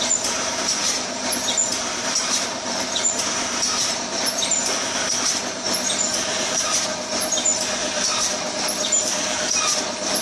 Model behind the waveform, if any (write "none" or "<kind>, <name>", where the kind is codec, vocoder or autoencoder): vocoder, BigVGAN v2